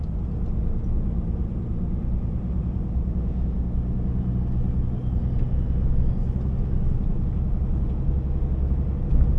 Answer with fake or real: real